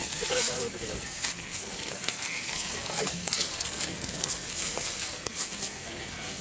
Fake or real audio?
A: fake